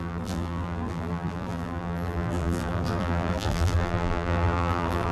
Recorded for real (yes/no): no